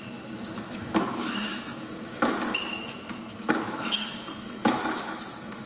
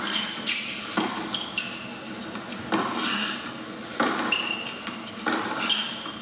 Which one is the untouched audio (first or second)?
second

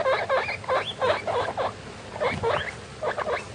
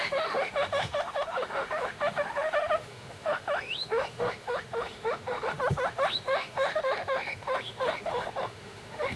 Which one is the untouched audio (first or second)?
first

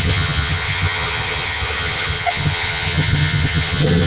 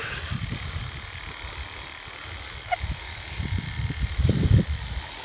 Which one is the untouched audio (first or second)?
second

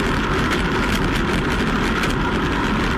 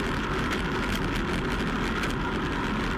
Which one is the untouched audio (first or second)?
second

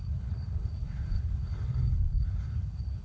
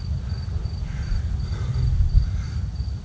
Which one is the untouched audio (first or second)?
second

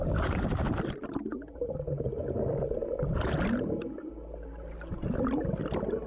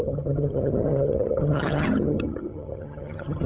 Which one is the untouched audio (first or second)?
first